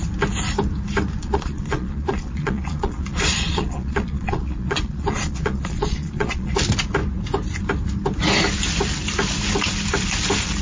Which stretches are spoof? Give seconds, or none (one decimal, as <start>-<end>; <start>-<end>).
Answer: 1.2-6.5

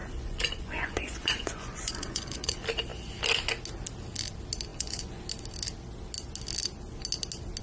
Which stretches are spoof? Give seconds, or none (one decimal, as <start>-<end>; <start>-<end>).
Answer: 0.0-2.5; 4.7-5.2

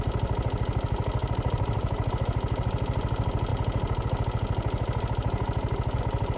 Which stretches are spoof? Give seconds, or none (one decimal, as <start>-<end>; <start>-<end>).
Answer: 1.2-2.1

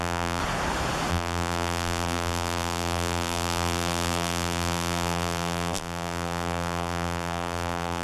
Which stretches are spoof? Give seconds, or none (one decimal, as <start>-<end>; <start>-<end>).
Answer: 0.0-0.4; 1.1-8.0

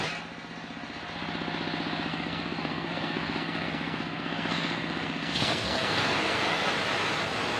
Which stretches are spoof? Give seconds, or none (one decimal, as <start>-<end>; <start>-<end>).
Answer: 2.1-6.7